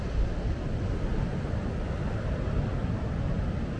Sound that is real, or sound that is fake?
real